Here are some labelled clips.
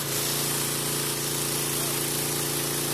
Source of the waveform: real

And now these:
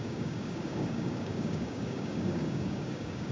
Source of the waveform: fake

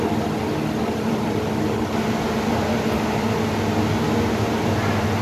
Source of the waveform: real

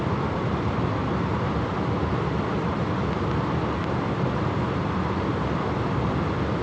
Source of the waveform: real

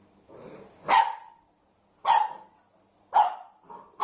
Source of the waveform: real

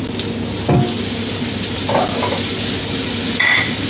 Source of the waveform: real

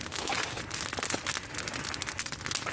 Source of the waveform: real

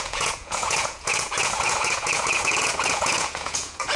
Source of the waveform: fake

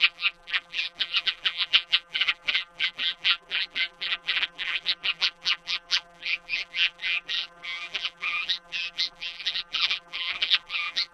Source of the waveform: fake